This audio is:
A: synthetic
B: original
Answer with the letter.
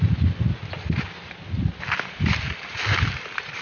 B